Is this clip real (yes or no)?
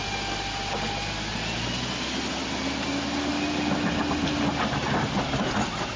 yes